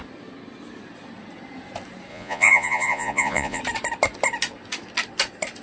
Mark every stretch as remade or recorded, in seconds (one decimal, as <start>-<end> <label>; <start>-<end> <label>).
0.0-2.1 recorded; 2.1-3.6 remade; 3.6-5.6 recorded